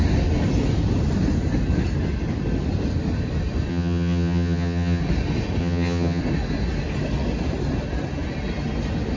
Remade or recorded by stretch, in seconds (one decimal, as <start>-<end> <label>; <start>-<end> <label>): 0.0-3.7 recorded; 3.7-5.0 remade; 5.0-5.6 recorded; 5.6-6.2 remade; 6.2-9.2 recorded

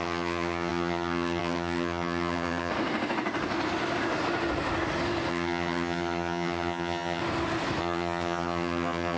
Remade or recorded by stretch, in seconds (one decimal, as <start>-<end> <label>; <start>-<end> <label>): 0.0-2.7 remade; 2.7-5.3 recorded; 5.3-7.2 remade; 7.2-7.8 recorded; 7.8-9.2 remade

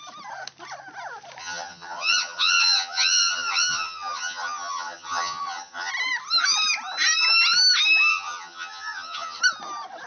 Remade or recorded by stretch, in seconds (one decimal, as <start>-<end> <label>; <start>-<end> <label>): 0.0-1.4 recorded; 1.4-5.9 remade; 5.9-8.1 recorded; 8.1-9.4 remade; 9.4-10.1 recorded